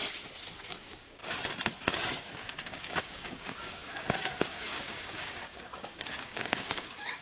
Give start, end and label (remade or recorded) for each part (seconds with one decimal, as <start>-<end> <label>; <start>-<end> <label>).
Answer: 0.0-0.7 recorded; 0.7-1.2 remade; 1.2-2.3 recorded; 2.3-7.2 remade